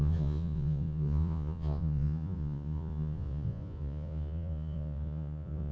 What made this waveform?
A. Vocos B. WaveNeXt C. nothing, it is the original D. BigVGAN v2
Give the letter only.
A